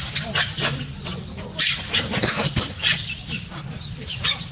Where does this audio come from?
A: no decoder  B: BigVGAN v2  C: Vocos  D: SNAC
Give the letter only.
B